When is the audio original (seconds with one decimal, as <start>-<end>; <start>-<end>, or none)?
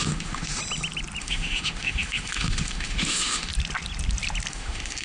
0.6-1.2; 3.5-4.5